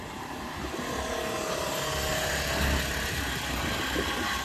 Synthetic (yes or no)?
no